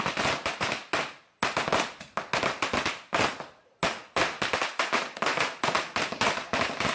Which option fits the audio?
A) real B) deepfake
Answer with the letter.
A